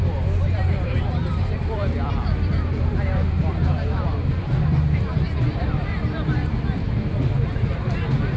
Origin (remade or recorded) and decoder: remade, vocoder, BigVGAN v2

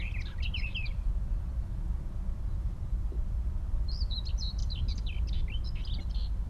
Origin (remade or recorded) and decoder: remade, vocoder, BigVGAN v2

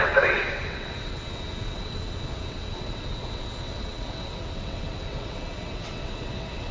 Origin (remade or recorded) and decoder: remade, vocoder, WaveNeXt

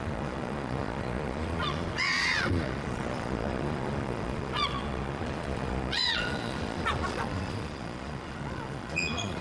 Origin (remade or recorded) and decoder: remade, vocoder, Vocos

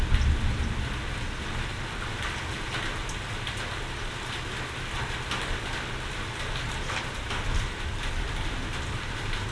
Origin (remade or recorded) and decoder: recorded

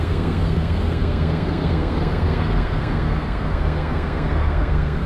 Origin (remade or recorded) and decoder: remade, codec, SNAC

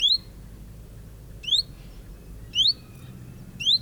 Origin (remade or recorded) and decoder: recorded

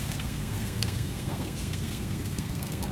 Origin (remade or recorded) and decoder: remade, codec, SNAC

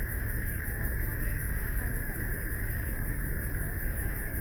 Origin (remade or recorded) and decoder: remade, codec, DAC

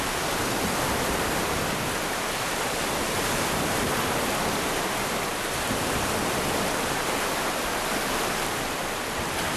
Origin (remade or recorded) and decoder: recorded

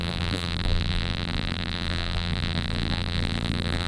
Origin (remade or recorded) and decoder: remade, vocoder, BigVGAN v2